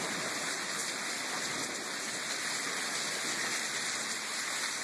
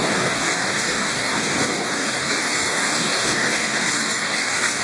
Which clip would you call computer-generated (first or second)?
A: second